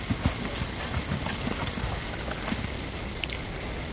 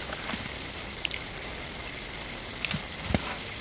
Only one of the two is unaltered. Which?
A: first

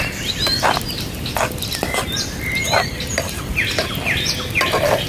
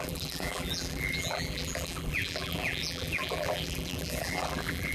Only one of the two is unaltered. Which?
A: first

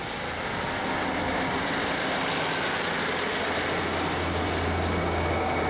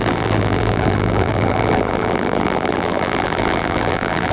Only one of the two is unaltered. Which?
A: first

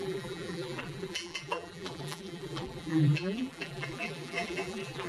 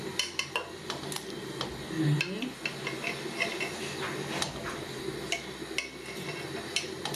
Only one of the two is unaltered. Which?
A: second